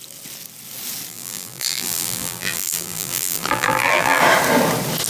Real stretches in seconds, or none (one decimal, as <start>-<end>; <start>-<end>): 0.0-1.1; 4.2-5.1